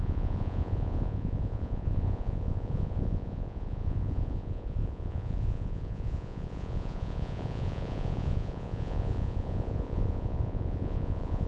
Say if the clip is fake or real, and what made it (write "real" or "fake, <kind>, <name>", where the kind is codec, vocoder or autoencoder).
fake, vocoder, Vocos